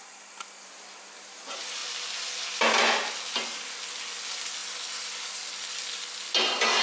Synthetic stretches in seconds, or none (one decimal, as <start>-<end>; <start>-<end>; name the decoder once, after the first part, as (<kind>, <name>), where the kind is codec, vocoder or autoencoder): none